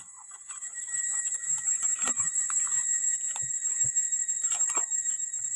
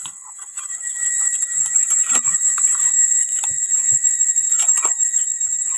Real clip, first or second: first